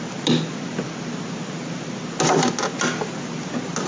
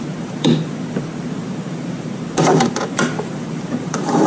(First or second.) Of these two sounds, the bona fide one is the first